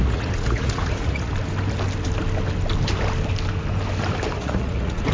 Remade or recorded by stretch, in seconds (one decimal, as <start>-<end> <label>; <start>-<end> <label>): 0.0-1.3 remade; 1.3-4.4 recorded; 4.4-5.1 remade